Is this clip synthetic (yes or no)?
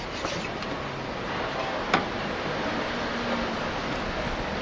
no